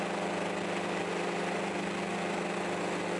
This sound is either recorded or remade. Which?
recorded